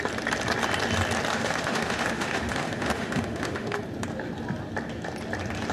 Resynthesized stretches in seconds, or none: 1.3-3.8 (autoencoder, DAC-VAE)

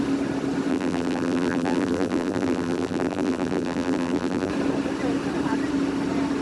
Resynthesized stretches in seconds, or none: 0.7-4.5 (vocoder, BigVGAN v2)

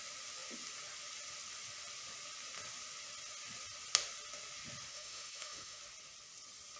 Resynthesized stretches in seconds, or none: 4.9-5.8 (autoencoder, DAC-VAE)